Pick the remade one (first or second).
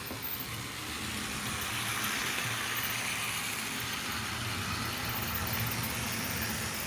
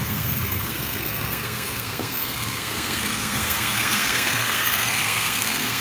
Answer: second